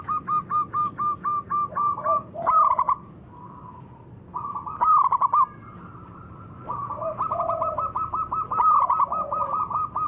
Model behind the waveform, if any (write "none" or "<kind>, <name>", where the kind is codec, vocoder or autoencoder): none